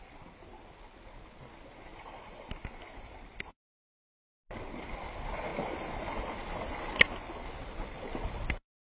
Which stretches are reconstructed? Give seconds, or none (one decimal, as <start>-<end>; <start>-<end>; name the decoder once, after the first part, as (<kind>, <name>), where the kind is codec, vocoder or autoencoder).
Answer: 1.9-2.5 (vocoder, BigVGAN v2)